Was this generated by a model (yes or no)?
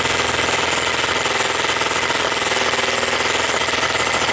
no